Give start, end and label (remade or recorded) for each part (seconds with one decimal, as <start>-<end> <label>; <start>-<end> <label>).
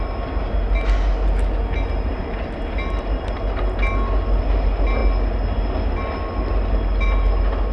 0.0-7.7 recorded